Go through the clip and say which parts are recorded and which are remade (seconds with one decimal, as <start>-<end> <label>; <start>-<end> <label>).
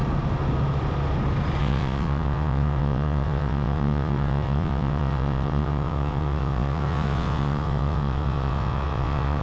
0.0-1.6 recorded; 1.6-9.4 remade